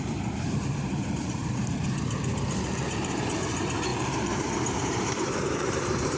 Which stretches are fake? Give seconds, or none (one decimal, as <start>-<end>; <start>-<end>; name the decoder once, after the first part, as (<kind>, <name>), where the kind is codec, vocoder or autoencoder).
0.0-6.2 (vocoder, BigVGAN v2)